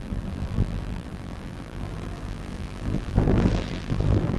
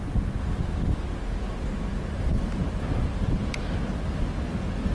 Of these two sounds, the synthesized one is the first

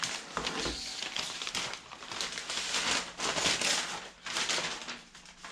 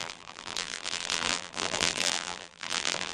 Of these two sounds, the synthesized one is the second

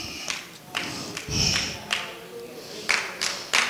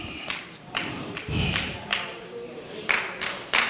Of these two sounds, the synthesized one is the second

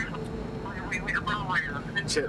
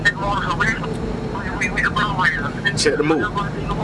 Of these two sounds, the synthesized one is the second